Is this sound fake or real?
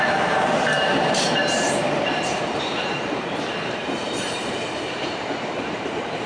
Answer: fake